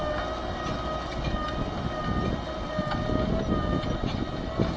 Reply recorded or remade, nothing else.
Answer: recorded